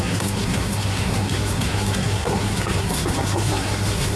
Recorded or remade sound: remade